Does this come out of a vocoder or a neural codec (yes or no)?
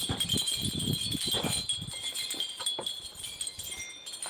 no